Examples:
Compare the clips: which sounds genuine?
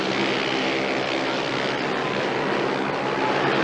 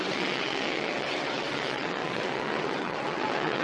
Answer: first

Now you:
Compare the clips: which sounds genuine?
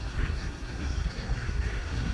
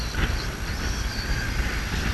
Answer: second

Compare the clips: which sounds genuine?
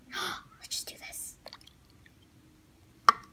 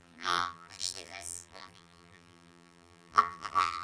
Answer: first